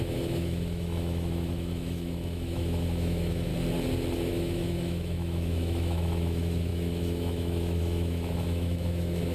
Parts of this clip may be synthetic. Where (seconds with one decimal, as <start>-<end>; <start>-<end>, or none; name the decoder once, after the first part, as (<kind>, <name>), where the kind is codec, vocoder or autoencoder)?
0.0-3.5 (autoencoder, DAC-VAE); 4.3-9.3